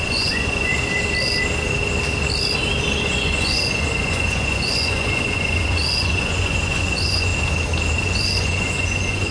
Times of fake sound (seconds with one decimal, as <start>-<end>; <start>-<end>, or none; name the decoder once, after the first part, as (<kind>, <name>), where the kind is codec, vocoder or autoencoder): 0.0-0.7 (vocoder, Vocos); 3.0-7.3; 8.0-9.3